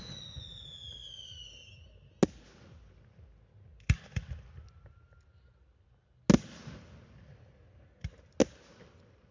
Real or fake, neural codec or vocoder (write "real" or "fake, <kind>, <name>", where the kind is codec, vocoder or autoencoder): real